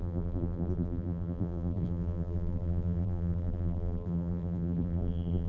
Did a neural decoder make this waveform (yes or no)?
yes